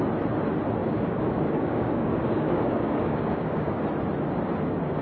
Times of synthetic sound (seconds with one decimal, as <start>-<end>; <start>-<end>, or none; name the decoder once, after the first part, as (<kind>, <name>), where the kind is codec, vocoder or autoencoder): 0.8-3.8 (codec, DAC)